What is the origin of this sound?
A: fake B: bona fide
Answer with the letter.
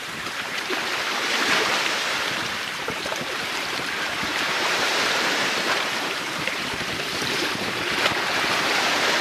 A